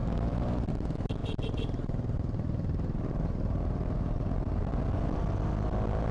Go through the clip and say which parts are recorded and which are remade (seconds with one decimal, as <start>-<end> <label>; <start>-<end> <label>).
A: 0.0-1.2 recorded; 1.2-4.7 remade; 4.7-6.1 recorded